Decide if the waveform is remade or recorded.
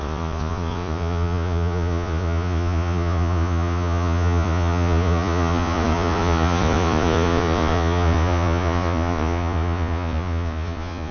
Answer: remade